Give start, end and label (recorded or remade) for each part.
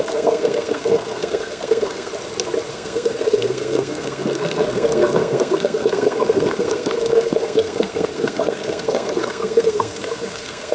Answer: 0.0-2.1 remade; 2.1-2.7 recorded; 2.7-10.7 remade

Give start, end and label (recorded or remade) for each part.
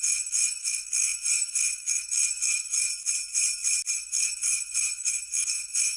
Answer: 0.0-2.9 remade; 2.9-3.9 recorded; 3.9-6.0 remade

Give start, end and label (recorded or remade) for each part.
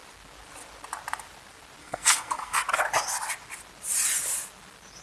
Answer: 0.0-1.8 recorded; 1.8-2.6 remade; 2.6-5.0 recorded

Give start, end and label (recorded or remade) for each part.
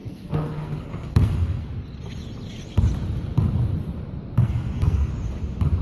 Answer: 0.0-1.7 remade; 1.7-4.4 recorded; 4.4-5.1 remade; 5.1-5.8 recorded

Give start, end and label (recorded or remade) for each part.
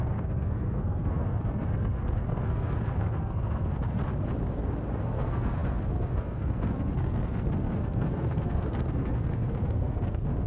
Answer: 0.0-4.0 remade; 4.0-4.9 recorded; 4.9-10.5 remade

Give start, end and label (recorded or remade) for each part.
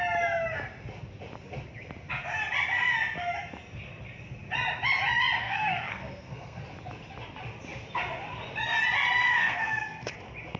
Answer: 0.0-5.4 recorded; 5.4-6.6 remade; 6.6-9.4 recorded; 9.4-10.1 remade; 10.1-10.6 recorded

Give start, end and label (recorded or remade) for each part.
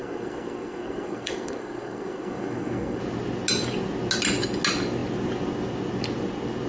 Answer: 0.0-3.0 remade; 3.0-6.7 recorded